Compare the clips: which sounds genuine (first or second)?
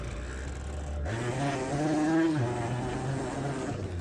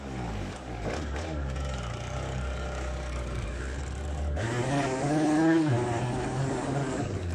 first